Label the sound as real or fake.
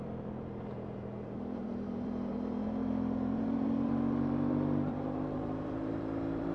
fake